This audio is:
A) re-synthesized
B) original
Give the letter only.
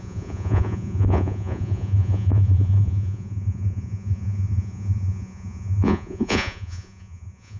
A